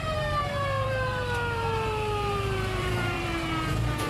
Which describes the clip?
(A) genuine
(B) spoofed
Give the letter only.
B